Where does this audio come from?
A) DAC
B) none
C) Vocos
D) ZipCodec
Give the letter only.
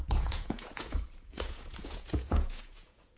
C